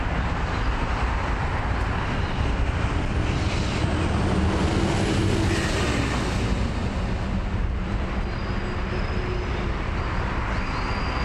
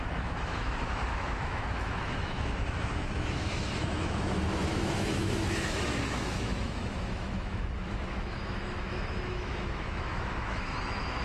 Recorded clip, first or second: first